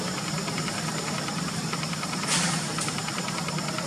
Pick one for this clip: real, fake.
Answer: fake